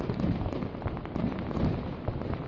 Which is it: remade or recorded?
remade